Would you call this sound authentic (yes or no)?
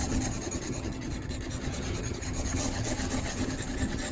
no